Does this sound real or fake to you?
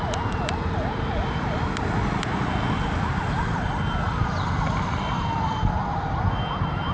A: fake